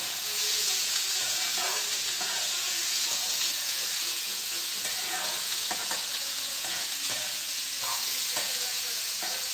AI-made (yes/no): yes